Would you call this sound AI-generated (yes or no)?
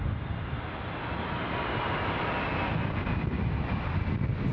no